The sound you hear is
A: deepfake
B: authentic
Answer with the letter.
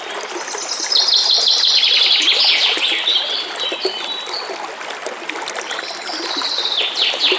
B